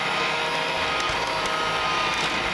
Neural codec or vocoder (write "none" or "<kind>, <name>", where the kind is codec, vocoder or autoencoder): none